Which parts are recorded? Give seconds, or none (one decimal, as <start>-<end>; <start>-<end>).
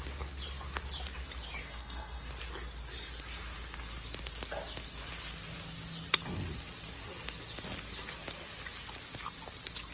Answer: 0.0-1.6; 2.3-9.9